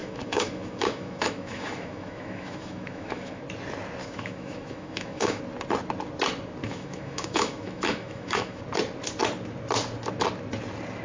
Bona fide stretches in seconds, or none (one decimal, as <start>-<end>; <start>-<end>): 3.4-4.0; 5.4-6.6; 8.6-11.0